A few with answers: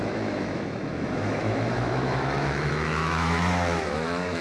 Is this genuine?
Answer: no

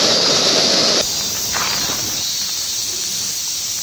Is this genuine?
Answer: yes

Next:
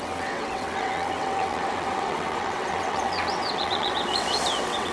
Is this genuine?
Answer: no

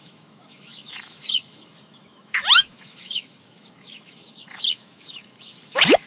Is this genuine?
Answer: no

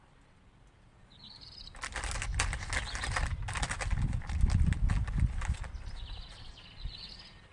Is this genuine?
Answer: yes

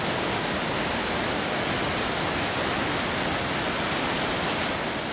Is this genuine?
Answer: yes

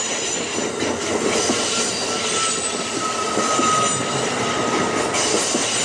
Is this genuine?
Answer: yes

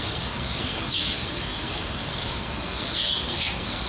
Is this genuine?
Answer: no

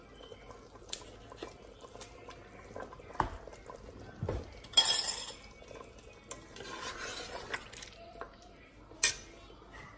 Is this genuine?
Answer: yes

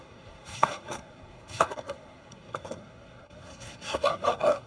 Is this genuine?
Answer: no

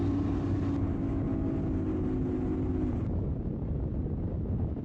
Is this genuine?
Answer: yes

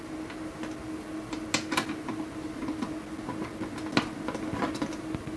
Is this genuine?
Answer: yes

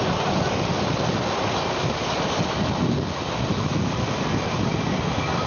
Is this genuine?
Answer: yes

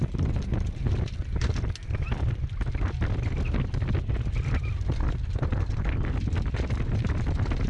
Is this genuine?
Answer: yes